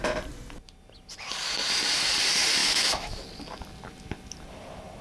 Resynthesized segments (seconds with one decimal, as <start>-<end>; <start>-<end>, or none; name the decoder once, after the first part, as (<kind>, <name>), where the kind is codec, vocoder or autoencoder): 2.6-3.2 (autoencoder, DAC-VAE)